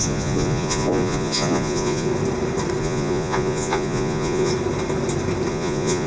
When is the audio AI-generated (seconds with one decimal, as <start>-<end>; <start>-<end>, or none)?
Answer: 0.0-2.1; 2.8-4.5; 5.5-6.1